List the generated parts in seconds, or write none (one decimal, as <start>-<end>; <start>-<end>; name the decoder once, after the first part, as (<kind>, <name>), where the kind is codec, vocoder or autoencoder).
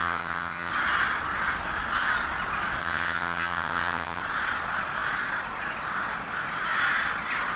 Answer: 0.0-0.7 (vocoder, HiFi-GAN); 2.8-4.2